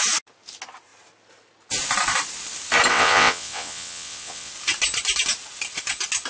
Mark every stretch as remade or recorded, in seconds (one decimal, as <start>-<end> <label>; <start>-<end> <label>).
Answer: 0.0-2.9 recorded; 2.9-4.5 remade; 4.5-6.3 recorded